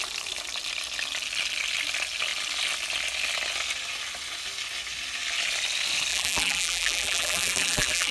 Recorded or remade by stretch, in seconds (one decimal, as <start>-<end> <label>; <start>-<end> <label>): 0.0-6.1 recorded; 6.1-8.1 remade